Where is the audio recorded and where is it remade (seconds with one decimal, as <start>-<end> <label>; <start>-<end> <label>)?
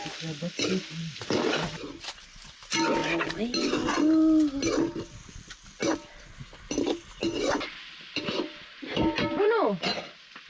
0.0-10.5 recorded